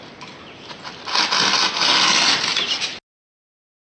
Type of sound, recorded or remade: recorded